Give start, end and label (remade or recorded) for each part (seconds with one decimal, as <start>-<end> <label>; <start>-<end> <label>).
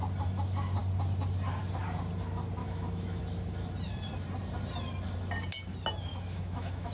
0.0-2.6 recorded; 2.6-3.2 remade; 3.2-6.1 recorded; 6.1-6.9 remade